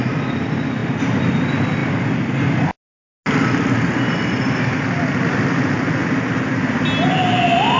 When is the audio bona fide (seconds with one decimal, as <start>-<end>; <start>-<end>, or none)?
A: 0.0-7.8